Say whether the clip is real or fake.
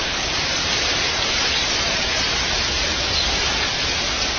fake